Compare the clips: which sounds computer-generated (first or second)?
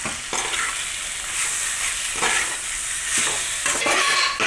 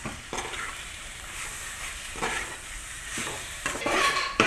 second